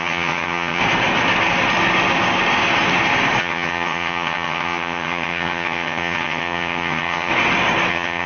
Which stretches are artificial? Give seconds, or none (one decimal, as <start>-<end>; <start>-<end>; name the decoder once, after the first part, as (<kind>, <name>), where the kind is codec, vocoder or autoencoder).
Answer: 0.0-0.8 (vocoder, HiFi-GAN); 3.4-7.3; 7.9-8.3